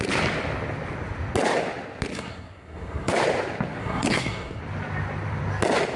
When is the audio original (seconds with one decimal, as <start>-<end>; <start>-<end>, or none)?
0.0-2.1; 3.1-3.8; 4.6-6.0